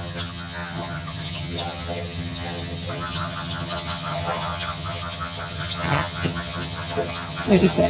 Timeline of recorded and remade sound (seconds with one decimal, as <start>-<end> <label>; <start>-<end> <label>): 0.0-7.9 remade